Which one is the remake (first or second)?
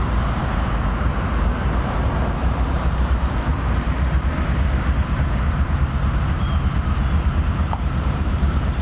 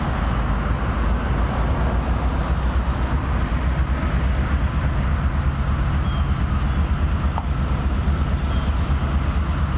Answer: first